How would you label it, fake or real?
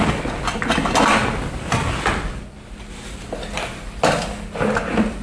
real